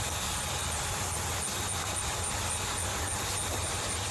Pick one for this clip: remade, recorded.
recorded